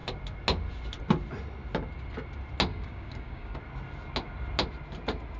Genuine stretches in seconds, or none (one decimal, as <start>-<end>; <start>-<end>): 0.0-2.7; 3.6-5.4